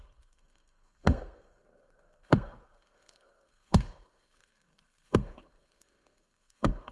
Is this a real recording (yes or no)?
no